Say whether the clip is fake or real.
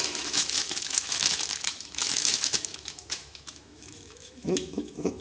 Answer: fake